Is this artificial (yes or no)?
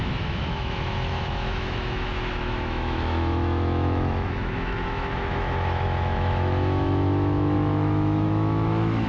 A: yes